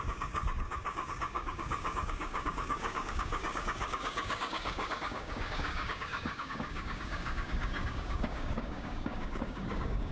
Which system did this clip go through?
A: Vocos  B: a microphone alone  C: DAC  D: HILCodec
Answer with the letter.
C